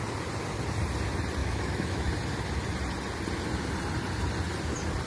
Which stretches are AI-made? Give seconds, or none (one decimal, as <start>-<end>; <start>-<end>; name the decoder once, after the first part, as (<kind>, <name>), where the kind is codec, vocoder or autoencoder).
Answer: 1.4-2.1 (autoencoder, DAC-VAE)